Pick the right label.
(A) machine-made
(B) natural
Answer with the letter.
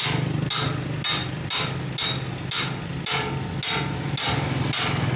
B